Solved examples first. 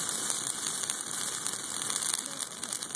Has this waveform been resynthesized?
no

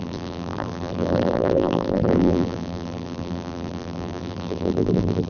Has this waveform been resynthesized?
yes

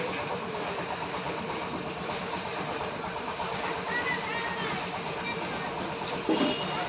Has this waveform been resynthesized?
no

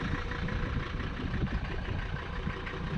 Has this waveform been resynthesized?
yes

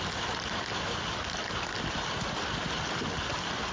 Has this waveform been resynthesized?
no